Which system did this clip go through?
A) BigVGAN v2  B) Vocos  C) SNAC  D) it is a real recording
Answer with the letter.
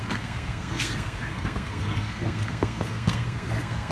C